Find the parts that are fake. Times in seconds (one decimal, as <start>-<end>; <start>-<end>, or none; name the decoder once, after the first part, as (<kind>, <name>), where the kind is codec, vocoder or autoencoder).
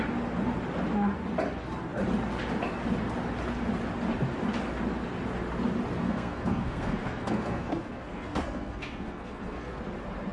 6.0-9.8 (codec, SNAC)